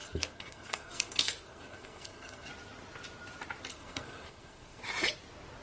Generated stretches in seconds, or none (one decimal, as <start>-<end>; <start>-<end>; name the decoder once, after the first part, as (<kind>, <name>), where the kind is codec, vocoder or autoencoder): 0.0-2.5 (codec, SNAC); 3.7-4.8